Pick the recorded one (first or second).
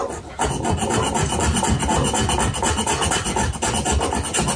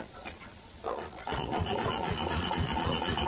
first